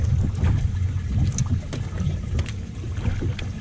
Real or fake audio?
real